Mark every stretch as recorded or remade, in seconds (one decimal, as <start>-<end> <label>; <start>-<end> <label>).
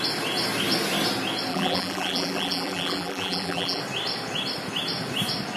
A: 0.0-1.5 recorded; 1.5-3.8 remade; 3.8-5.6 recorded